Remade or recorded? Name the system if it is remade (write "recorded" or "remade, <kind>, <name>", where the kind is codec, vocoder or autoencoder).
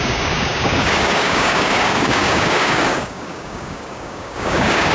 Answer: remade, codec, DAC